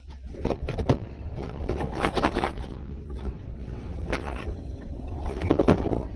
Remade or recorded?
remade